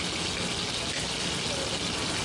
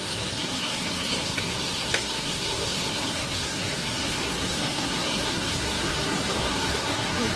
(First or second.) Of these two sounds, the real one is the first